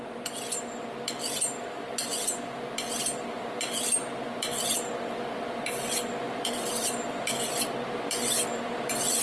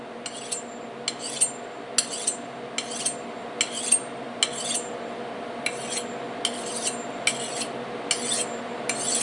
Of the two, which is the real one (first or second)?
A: second